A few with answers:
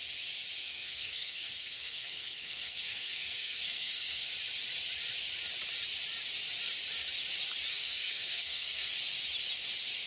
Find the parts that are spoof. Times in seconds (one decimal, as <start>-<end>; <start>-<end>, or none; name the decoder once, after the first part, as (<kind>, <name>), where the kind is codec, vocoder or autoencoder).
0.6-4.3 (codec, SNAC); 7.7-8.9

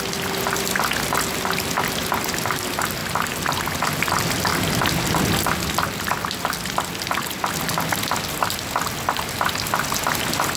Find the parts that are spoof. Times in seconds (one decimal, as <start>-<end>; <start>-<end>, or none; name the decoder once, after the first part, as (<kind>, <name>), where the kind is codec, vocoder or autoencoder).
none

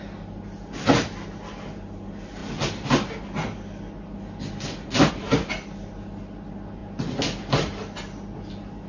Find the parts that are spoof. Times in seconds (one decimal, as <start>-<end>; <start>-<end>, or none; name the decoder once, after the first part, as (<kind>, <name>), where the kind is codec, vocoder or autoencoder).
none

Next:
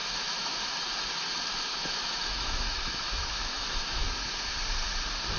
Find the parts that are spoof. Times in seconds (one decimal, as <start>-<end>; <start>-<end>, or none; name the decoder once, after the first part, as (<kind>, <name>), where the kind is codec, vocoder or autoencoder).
0.0-0.7 (autoencoder, DAC-VAE); 1.7-4.2